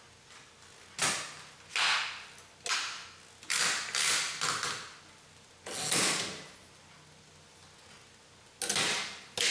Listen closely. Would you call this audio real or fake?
real